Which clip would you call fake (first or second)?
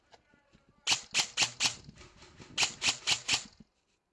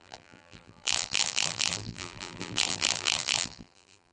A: second